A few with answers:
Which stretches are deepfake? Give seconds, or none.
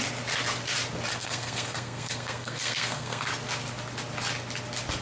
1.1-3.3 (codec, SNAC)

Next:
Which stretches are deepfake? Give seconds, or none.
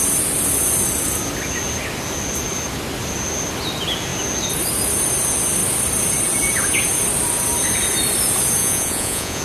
8.6-9.4 (vocoder, Vocos)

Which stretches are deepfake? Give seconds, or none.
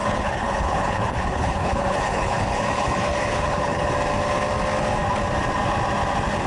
0.0-3.9 (codec, HILCodec)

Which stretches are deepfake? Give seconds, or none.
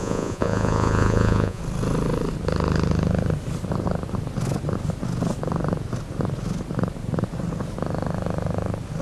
0.0-1.6 (vocoder, Vocos)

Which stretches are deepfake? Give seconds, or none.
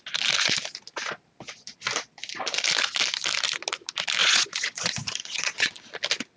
4.2-5.8 (vocoder, Vocos)